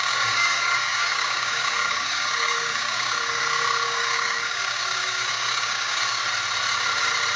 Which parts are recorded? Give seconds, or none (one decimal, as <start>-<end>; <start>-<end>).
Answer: 6.2-7.4